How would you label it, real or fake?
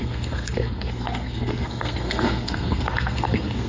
fake